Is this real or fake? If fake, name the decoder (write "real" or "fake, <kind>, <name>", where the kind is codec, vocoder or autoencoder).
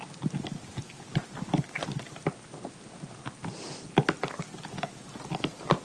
real